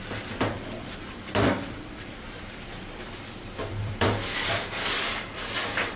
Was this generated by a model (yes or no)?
yes